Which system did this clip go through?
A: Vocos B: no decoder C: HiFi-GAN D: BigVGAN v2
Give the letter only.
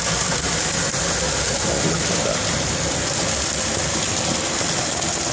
B